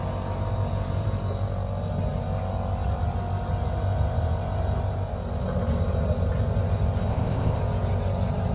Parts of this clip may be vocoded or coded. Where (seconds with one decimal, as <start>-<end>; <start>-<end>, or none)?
7.1-7.6